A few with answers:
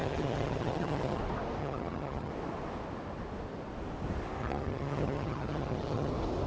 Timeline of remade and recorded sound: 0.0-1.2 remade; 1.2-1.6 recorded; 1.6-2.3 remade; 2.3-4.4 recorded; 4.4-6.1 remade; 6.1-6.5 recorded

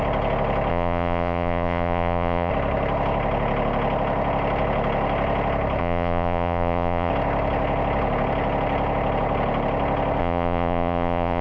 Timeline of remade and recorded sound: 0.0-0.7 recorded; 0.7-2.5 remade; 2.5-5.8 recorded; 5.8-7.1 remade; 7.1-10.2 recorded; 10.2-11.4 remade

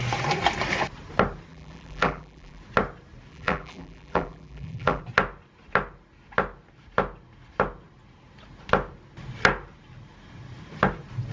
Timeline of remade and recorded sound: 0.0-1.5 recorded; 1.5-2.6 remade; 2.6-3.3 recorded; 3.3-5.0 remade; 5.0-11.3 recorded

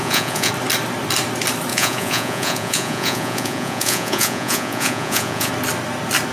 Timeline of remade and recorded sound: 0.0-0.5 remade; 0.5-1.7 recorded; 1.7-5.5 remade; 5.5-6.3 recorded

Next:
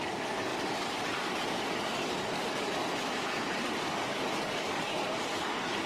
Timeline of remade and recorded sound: 0.0-2.8 remade; 2.8-3.8 recorded; 3.8-5.9 remade

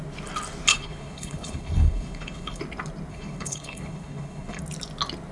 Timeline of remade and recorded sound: 0.0-0.7 recorded; 0.7-2.6 remade; 2.6-3.1 recorded; 3.1-4.6 remade; 4.6-5.3 recorded